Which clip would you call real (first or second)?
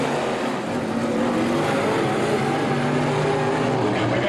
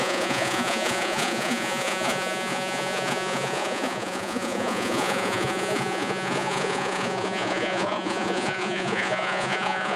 first